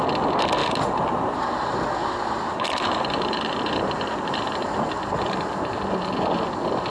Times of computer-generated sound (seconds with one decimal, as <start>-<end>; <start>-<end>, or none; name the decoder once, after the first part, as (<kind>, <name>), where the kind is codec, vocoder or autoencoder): 0.6-1.4 (vocoder, BigVGAN v2); 2.0-6.1